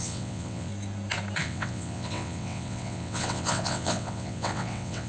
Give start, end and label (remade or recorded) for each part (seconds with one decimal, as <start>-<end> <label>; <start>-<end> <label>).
0.0-0.7 remade; 0.7-1.4 recorded; 1.4-5.1 remade